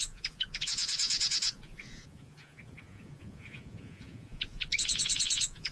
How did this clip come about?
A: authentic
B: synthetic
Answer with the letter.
B